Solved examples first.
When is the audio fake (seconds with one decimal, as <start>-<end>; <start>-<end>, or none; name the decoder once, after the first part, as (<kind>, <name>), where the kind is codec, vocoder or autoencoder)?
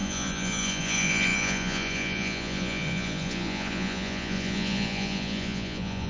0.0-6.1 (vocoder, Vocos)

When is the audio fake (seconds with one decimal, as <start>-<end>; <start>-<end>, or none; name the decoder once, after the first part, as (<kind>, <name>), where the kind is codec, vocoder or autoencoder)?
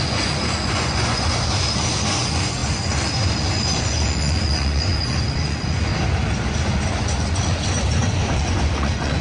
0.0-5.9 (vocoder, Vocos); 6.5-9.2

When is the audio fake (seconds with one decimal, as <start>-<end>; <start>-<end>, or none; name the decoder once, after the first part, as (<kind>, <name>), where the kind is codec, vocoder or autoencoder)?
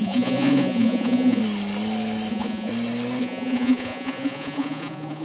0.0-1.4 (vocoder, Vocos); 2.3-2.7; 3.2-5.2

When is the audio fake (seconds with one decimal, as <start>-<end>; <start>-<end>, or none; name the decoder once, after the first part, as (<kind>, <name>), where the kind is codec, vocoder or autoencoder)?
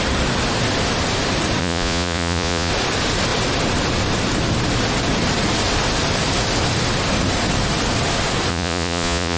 1.6-2.7 (vocoder, Vocos); 8.5-9.4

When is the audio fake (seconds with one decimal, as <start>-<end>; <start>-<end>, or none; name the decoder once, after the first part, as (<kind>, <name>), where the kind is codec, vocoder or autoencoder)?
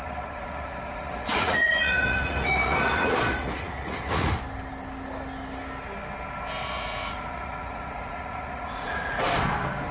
0.0-4.4 (vocoder, Vocos); 6.6-9.2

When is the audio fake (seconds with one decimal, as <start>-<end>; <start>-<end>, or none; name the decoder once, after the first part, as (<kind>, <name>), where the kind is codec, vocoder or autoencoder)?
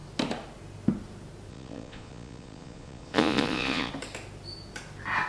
1.5-3.9 (vocoder, Vocos)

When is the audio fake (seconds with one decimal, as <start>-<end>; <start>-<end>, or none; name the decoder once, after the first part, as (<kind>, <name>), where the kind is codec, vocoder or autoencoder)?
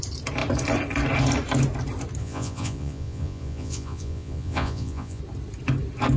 2.2-5.2 (vocoder, Vocos)